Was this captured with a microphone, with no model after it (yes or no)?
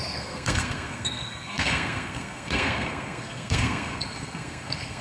no